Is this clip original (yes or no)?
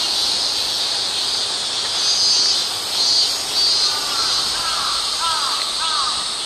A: yes